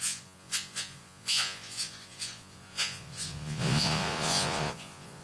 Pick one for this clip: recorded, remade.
remade